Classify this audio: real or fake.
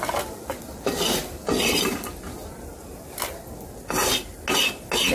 real